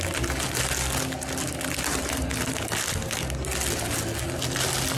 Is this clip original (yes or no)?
yes